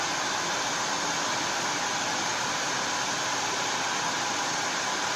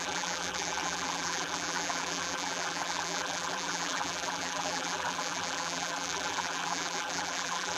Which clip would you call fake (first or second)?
second